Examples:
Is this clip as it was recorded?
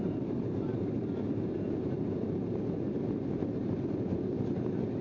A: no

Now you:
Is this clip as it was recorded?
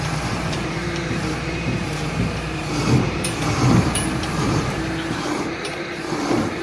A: no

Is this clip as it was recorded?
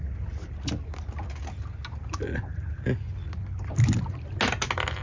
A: yes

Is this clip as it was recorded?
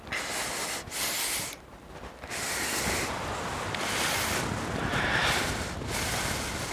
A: yes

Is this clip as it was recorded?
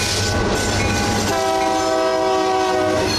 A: yes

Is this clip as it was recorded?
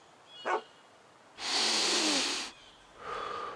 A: yes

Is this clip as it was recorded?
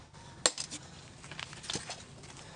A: yes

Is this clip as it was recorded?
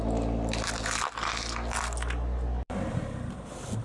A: no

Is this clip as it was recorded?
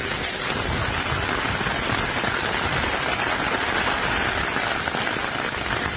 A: yes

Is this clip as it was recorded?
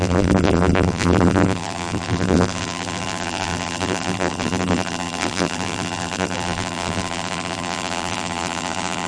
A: no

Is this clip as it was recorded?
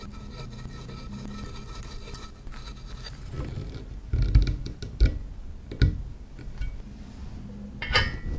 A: yes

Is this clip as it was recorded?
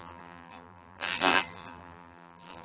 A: no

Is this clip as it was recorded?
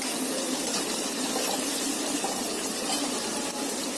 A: no